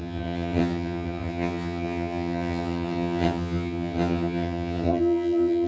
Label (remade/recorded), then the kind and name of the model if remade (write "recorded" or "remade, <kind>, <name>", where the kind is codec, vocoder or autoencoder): remade, vocoder, HiFi-GAN